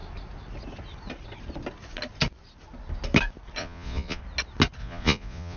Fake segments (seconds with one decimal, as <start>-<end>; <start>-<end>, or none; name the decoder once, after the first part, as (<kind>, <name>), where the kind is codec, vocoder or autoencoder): 3.6-4.2 (vocoder, Vocos); 4.8-5.6